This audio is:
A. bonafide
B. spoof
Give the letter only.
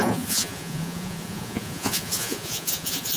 B